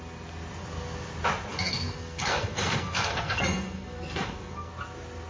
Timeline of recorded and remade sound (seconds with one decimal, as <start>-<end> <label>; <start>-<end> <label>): 0.0-1.5 recorded; 1.5-4.7 remade; 4.7-5.3 recorded